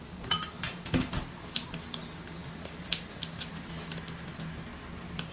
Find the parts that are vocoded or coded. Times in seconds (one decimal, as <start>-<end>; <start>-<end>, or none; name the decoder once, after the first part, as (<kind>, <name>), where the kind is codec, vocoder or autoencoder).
none